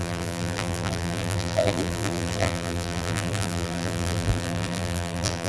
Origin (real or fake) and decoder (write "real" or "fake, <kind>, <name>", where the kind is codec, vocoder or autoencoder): fake, vocoder, BigVGAN v2